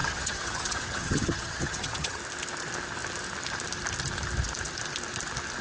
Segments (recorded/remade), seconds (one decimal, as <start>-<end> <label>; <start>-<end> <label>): 0.0-2.2 remade; 2.2-5.6 recorded

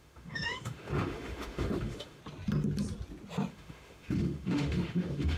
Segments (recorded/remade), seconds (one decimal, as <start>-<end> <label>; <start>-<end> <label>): 0.0-2.2 remade; 2.2-3.5 recorded; 3.5-5.4 remade

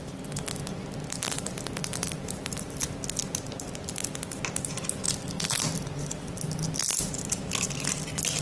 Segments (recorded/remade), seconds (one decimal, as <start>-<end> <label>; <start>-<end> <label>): 0.0-8.4 recorded

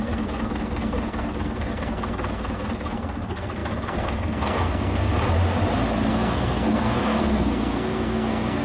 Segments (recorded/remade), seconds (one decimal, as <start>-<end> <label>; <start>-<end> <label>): 0.0-5.1 remade; 5.1-6.1 recorded; 6.1-8.6 remade

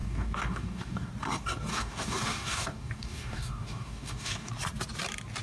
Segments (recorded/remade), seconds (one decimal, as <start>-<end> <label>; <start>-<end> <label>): 0.0-1.1 remade; 1.1-1.7 recorded; 1.7-4.5 remade; 4.5-5.4 recorded

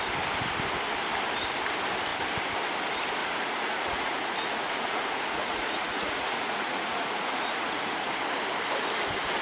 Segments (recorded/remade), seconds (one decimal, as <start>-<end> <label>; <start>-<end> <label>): 0.0-3.2 recorded; 3.2-8.1 remade; 8.1-9.4 recorded

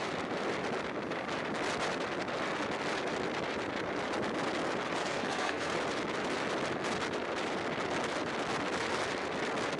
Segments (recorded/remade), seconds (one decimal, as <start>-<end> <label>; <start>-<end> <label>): 0.0-5.0 recorded; 5.0-5.7 remade; 5.7-9.8 recorded

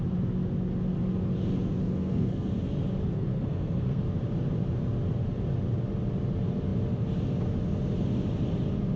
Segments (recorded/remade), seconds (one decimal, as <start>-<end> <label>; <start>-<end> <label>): 0.0-1.8 recorded; 1.8-2.5 remade; 2.5-3.0 recorded; 3.0-4.0 remade; 4.0-9.0 recorded